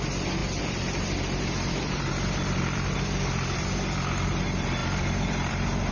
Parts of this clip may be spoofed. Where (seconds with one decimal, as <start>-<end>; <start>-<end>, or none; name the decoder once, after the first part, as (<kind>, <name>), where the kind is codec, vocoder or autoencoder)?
0.0-5.9 (vocoder, BigVGAN v2)